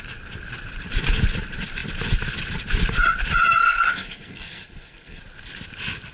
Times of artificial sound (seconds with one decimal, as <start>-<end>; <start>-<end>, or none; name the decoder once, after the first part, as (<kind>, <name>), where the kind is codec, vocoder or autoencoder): 3.6-5.2 (codec, SNAC)

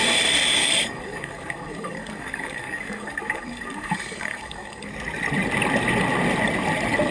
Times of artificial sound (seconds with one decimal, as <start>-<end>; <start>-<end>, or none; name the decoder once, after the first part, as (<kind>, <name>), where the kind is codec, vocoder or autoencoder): 0.6-4.9 (codec, DAC)

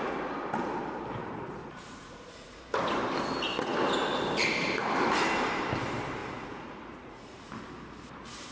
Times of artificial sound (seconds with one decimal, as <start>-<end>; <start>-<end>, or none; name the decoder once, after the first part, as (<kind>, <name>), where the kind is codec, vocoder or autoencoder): 1.2-2.6 (vocoder, Vocos); 6.2-7.5

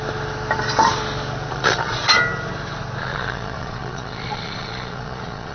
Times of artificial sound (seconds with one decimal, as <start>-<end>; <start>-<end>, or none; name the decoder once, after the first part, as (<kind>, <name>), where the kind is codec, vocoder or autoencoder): 1.5-2.0 (vocoder, Vocos); 3.0-5.5

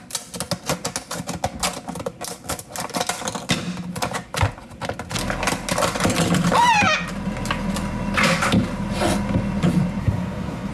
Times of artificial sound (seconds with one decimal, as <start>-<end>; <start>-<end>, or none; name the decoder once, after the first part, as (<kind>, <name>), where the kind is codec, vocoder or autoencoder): 10.0-10.7 (codec, SNAC)

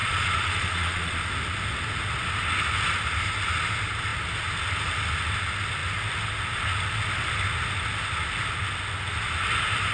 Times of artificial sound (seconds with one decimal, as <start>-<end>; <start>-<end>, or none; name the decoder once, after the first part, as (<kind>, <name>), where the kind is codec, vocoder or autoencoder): 0.0-1.3 (vocoder, Vocos)

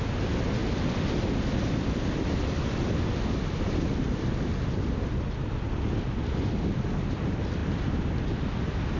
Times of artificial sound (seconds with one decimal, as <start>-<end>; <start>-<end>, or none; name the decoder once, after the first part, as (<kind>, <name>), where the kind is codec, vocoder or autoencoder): 0.6-5.4 (vocoder, BigVGAN v2); 7.6-8.2

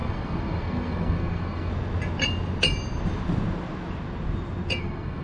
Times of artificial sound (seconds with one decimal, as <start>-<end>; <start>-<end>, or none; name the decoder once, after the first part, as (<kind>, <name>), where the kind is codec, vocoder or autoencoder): 0.0-1.7 (codec, SNAC); 4.8-5.2